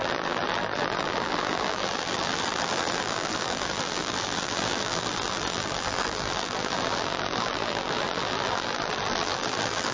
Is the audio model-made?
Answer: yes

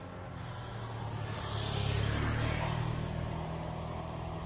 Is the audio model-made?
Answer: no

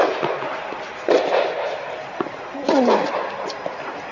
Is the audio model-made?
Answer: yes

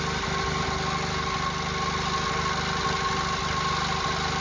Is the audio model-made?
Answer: no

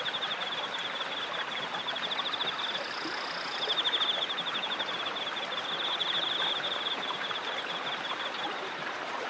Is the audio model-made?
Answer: no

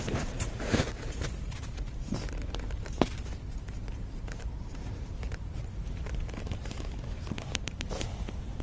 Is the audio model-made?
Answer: yes